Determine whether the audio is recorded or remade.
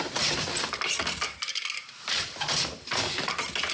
recorded